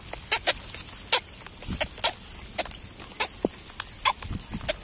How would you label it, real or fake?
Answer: real